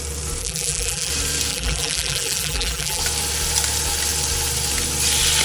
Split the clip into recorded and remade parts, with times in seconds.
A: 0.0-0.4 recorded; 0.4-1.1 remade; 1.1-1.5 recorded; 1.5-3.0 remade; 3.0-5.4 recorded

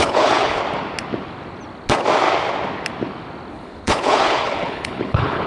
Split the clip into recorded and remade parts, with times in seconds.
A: 0.0-0.6 remade; 0.6-3.5 recorded; 3.5-5.5 remade

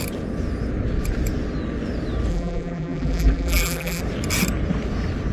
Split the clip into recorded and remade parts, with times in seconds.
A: 0.0-2.3 recorded; 2.3-4.0 remade; 4.0-5.3 recorded